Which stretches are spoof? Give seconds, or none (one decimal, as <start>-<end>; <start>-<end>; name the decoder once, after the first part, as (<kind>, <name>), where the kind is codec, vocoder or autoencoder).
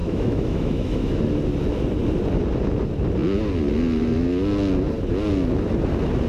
0.0-1.2 (autoencoder, DAC-VAE)